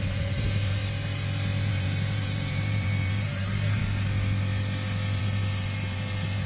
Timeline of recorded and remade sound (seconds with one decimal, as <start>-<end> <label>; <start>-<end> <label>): 0.0-0.8 remade; 0.8-1.7 recorded; 1.7-3.8 remade; 3.8-5.2 recorded; 5.2-6.5 remade